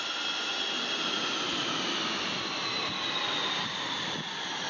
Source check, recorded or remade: recorded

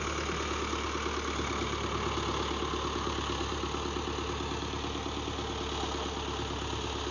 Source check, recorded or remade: recorded